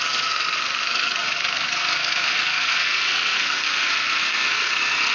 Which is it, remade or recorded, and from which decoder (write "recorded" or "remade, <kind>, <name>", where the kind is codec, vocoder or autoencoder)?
remade, codec, SNAC